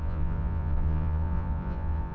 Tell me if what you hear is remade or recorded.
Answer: remade